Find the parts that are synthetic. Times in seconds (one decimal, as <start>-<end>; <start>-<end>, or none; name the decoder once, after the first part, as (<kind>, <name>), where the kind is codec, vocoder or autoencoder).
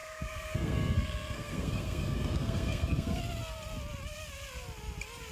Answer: 0.0-3.2 (codec, SNAC)